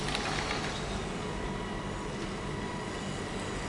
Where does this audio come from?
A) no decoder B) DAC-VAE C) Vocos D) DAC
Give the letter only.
A